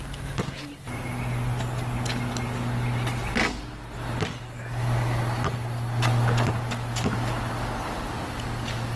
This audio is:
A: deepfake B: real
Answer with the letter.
B